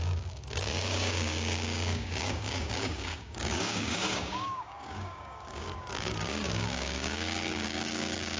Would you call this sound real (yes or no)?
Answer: no